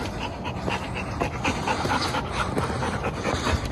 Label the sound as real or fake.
real